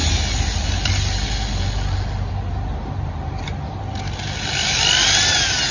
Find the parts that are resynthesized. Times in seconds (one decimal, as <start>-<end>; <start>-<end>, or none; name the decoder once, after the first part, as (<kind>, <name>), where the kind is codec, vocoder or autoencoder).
none